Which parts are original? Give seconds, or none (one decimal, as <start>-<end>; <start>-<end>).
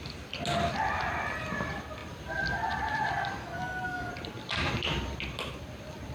0.0-3.4; 4.1-6.1